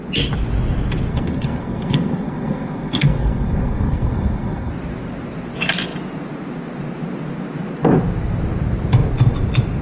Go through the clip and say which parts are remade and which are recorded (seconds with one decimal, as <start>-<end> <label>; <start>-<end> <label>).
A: 0.0-1.1 recorded; 1.1-4.7 remade; 4.7-9.8 recorded